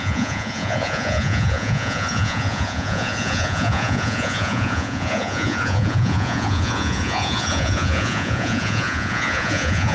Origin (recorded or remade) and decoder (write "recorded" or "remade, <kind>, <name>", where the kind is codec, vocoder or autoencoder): remade, vocoder, Vocos